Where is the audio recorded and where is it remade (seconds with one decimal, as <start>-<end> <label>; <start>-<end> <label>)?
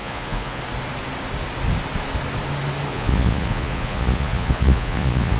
0.0-0.6 remade; 0.6-2.9 recorded; 2.9-5.4 remade